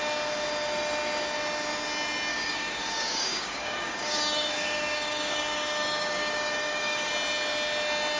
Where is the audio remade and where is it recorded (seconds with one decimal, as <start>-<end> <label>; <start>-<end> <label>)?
0.0-2.3 recorded; 2.3-7.1 remade; 7.1-8.2 recorded